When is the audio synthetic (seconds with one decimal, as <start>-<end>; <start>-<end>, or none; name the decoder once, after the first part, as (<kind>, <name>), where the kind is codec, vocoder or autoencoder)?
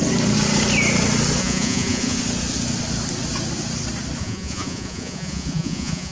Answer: 1.4-2.2 (vocoder, Vocos); 4.2-6.1